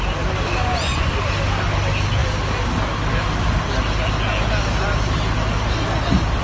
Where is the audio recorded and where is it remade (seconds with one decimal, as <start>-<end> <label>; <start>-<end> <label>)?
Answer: 0.0-0.6 recorded; 0.6-1.1 remade; 1.1-6.4 recorded